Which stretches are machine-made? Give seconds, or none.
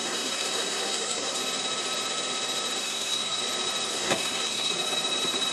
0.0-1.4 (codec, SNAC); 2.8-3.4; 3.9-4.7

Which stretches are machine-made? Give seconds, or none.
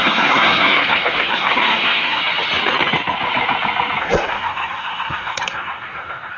0.0-2.2 (codec, SNAC); 4.0-6.4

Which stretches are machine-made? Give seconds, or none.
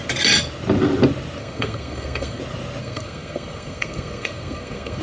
1.4-2.4 (codec, SNAC); 2.8-5.0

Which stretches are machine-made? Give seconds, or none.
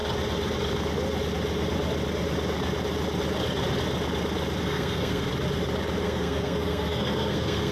4.6-5.3 (codec, SNAC); 6.0-7.7